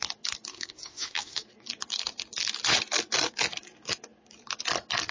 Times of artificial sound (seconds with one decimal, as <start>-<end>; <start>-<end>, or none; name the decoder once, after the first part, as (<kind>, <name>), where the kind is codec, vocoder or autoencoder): 0.5-1.4 (autoencoder, DAC-VAE)